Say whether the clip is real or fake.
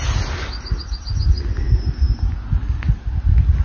real